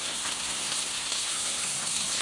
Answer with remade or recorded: remade